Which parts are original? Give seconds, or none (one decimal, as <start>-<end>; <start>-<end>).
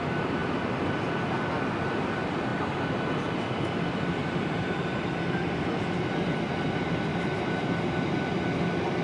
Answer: 0.0-4.2; 5.0-7.1; 7.8-9.0